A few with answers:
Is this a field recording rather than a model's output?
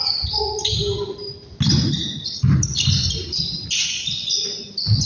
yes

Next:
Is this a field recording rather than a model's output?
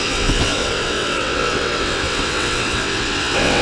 no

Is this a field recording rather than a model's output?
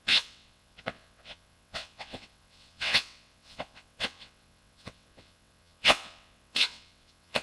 no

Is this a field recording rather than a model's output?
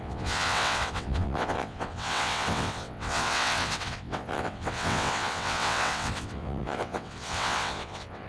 no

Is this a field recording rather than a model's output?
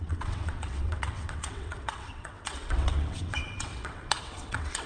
no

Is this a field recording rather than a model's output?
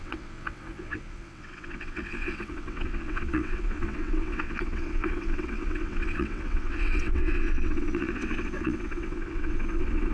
no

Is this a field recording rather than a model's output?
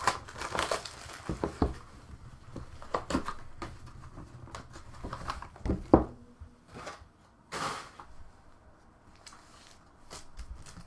yes